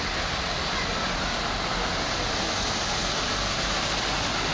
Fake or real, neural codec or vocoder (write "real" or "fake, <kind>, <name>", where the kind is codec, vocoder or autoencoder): real